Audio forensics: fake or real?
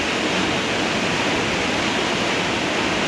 real